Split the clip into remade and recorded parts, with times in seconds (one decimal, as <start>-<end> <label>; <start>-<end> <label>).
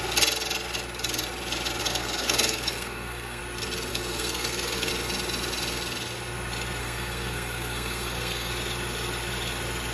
0.0-1.8 recorded; 1.8-3.4 remade; 3.4-3.9 recorded; 3.9-4.9 remade; 4.9-6.8 recorded; 6.8-8.5 remade; 8.5-9.9 recorded